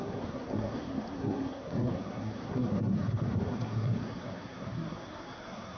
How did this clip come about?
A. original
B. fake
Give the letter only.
B